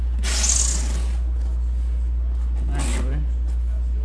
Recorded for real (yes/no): yes